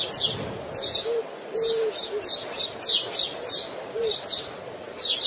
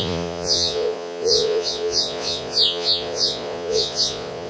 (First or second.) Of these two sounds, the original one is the first